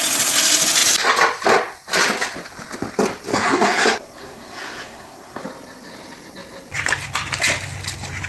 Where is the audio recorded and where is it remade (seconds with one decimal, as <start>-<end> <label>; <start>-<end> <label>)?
0.0-3.3 recorded; 3.3-5.4 remade; 5.4-8.3 recorded

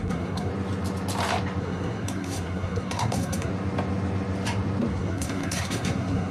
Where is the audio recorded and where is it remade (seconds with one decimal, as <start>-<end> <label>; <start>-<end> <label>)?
0.0-0.5 remade; 0.5-1.6 recorded; 1.6-3.5 remade; 3.5-4.9 recorded; 4.9-6.3 remade